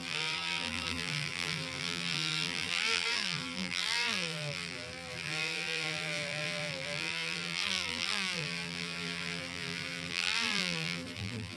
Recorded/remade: remade